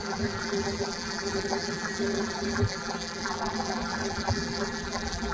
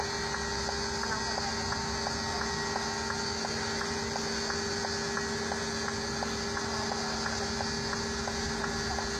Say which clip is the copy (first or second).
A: first